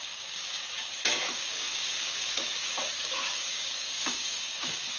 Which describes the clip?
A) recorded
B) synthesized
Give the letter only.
B